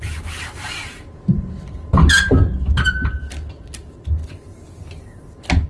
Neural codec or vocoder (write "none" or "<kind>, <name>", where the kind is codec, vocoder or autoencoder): none